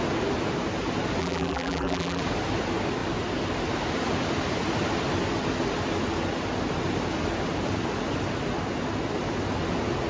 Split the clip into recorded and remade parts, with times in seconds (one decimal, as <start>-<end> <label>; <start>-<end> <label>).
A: 0.0-1.2 recorded; 1.2-2.2 remade; 2.2-10.1 recorded